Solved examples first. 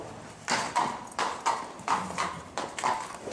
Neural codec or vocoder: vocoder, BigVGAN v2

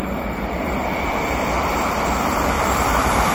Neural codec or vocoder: vocoder, BigVGAN v2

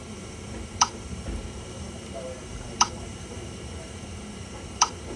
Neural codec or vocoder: vocoder, BigVGAN v2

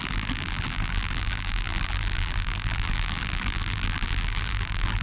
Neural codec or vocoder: vocoder, BigVGAN v2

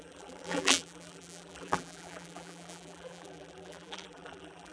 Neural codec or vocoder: vocoder, BigVGAN v2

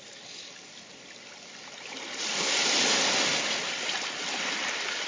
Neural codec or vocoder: none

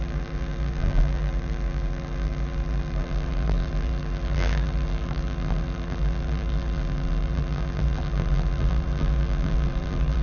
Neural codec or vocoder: vocoder, BigVGAN v2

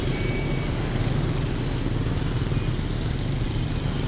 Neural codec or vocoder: none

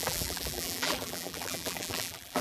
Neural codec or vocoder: vocoder, BigVGAN v2